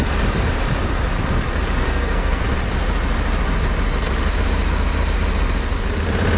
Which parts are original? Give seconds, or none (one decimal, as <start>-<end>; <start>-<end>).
0.0-1.8; 2.4-6.4